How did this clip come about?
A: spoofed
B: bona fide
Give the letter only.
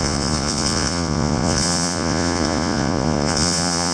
A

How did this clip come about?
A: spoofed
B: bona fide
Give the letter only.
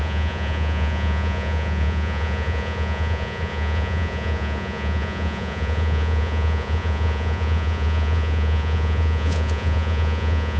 A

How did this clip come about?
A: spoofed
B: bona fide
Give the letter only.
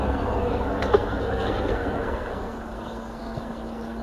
A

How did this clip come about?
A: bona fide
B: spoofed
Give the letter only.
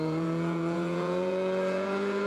B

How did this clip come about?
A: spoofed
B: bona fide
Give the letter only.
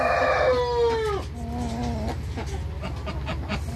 B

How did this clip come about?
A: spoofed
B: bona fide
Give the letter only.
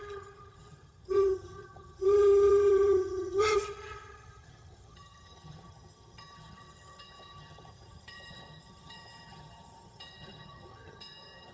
A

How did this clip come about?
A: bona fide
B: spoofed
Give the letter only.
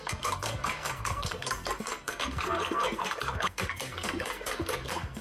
B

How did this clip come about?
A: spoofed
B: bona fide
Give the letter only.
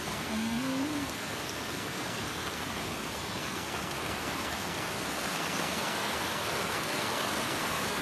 A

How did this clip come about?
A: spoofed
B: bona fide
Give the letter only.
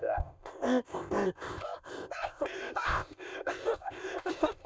A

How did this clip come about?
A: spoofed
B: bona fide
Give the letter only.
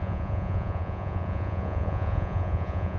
A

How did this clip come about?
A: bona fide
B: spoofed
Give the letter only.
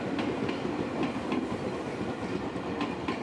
A